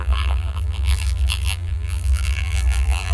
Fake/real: fake